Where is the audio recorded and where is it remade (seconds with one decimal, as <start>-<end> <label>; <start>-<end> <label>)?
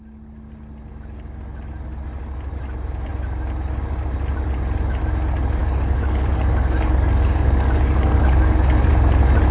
0.0-5.6 recorded; 5.6-8.9 remade; 8.9-9.5 recorded